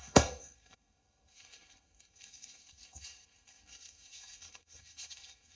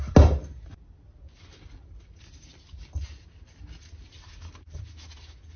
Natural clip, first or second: second